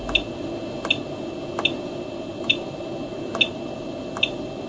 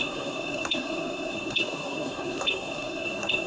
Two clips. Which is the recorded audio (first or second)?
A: first